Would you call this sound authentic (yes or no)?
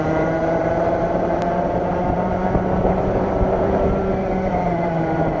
no